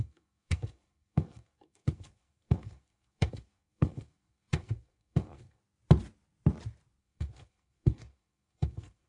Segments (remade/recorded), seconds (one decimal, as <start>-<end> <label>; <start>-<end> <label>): 0.0-5.6 remade; 5.6-7.0 recorded; 7.0-9.1 remade